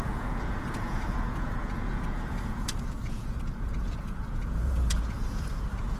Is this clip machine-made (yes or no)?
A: yes